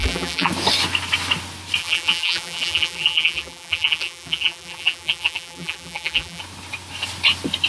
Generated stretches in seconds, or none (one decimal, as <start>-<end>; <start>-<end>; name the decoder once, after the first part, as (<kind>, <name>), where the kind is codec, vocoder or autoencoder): 0.0-0.5 (vocoder, BigVGAN v2); 1.8-6.4